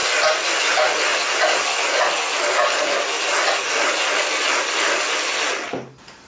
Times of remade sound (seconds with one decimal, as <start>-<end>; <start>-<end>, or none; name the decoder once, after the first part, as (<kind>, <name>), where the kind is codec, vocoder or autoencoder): none